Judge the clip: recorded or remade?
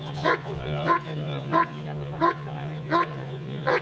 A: remade